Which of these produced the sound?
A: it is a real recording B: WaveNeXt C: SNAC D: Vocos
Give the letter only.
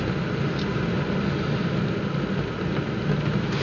A